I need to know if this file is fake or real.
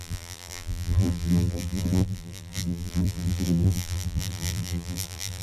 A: fake